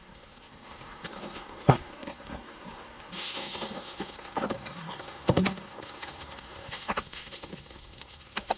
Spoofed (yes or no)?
yes